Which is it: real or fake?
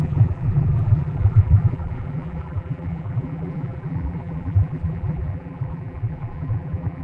fake